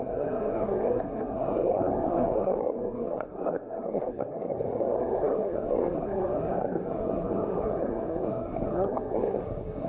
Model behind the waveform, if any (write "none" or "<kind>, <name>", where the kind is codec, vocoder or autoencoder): codec, SNAC